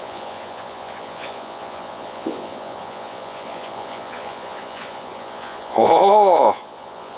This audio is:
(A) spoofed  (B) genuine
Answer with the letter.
A